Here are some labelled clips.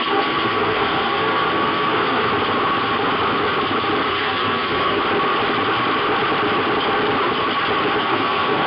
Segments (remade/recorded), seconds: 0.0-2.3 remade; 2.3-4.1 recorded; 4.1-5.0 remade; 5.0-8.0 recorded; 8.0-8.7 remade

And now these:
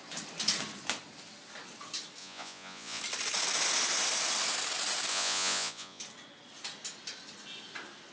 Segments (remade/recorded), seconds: 0.0-2.2 recorded; 2.2-3.0 remade; 3.0-5.1 recorded; 5.1-6.0 remade; 6.0-8.1 recorded

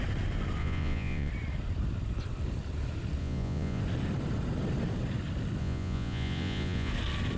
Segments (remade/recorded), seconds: 0.0-0.6 recorded; 0.6-1.3 remade; 1.3-3.2 recorded; 3.2-3.8 remade; 3.8-5.6 recorded; 5.6-6.9 remade; 6.9-7.4 recorded

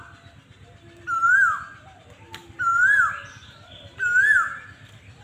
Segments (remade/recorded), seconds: 0.0-5.2 recorded

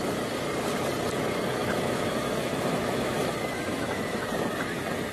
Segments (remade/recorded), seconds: 0.0-1.6 recorded; 1.6-4.2 remade; 4.2-5.1 recorded

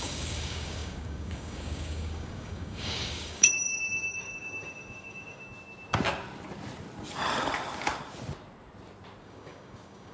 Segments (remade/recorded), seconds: 0.0-5.4 remade; 5.4-9.2 recorded; 9.2-10.1 remade

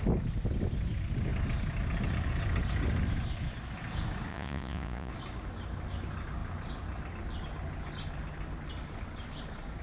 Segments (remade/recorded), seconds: 0.0-4.3 recorded; 4.3-5.1 remade; 5.1-9.8 recorded